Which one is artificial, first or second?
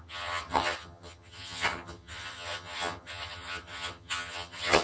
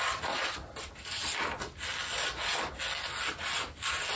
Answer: first